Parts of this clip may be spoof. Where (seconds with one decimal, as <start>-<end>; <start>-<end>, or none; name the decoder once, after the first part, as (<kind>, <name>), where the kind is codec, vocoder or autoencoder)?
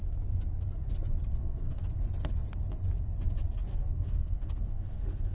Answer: 1.3-1.9 (codec, SNAC); 3.7-5.3